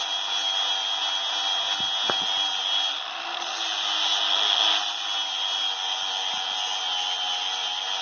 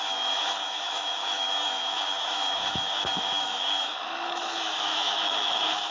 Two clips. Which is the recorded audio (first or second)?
first